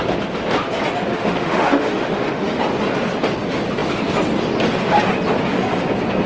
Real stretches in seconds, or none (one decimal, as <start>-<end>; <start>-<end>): 0.0-1.1; 2.6-6.3